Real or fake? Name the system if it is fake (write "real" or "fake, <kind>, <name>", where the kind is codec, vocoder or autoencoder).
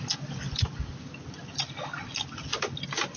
real